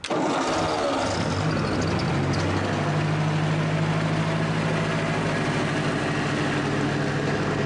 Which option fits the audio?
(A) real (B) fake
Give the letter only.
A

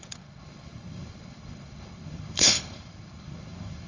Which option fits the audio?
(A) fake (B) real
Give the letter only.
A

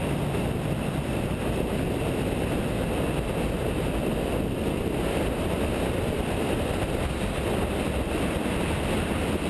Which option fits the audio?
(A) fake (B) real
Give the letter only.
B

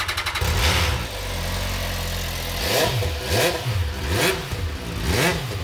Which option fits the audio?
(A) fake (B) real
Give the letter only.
B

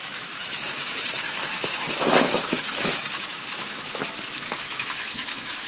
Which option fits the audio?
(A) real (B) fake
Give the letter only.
B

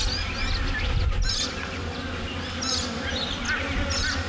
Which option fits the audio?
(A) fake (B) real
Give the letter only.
B